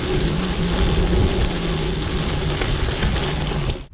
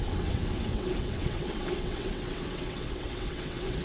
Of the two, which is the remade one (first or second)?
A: second